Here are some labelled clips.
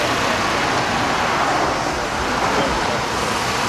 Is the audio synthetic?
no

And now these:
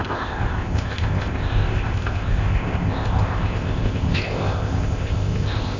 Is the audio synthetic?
yes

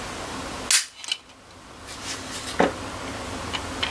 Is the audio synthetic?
no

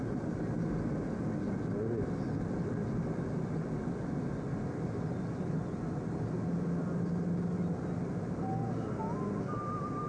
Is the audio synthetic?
no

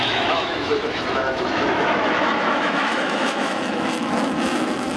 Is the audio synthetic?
yes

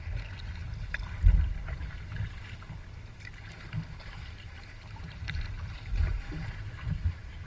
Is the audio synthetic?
no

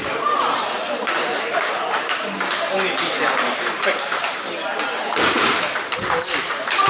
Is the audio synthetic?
yes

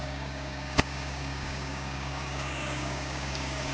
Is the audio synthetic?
yes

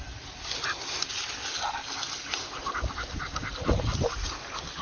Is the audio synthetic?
no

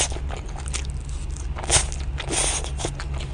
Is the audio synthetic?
no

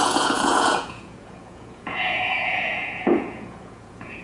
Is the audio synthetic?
yes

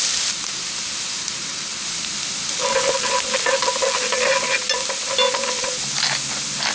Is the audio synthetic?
no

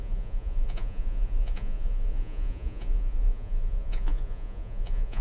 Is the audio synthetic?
yes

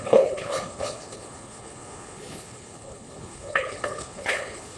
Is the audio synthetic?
yes